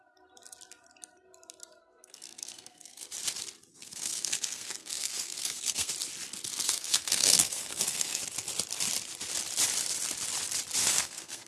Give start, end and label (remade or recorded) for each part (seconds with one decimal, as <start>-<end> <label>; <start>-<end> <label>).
0.0-1.8 recorded; 1.8-3.1 remade; 3.1-3.7 recorded; 3.7-5.9 remade; 5.9-6.5 recorded; 6.5-8.2 remade; 8.2-10.8 recorded; 10.8-11.5 remade